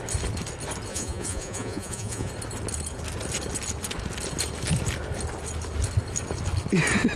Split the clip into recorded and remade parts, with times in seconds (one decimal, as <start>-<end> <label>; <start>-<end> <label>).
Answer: 0.0-0.9 recorded; 0.9-2.3 remade; 2.3-7.2 recorded